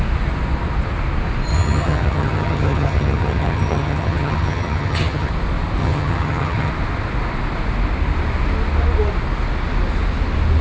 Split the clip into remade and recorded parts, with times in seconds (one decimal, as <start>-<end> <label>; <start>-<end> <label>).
0.0-1.5 recorded; 1.5-5.3 remade; 5.3-5.8 recorded; 5.8-6.7 remade; 6.7-10.6 recorded